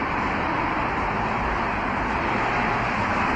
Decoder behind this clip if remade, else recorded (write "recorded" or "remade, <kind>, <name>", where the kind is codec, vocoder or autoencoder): recorded